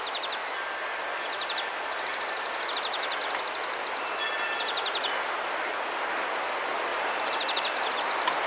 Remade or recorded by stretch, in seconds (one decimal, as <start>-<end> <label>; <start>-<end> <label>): 0.0-0.4 recorded; 0.4-1.0 remade; 1.0-6.9 recorded; 6.9-7.8 remade; 7.8-8.5 recorded